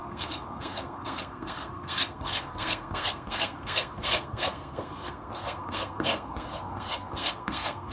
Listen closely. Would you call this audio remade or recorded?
remade